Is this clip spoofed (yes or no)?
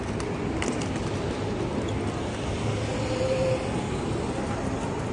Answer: no